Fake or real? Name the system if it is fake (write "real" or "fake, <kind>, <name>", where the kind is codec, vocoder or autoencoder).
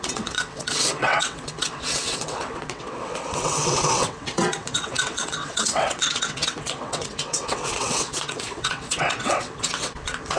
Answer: fake, vocoder, WaveNeXt